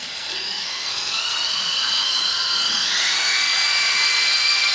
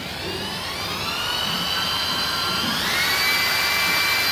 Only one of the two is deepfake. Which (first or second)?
first